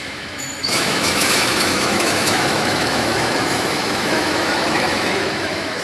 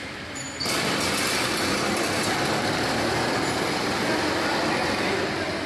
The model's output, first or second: first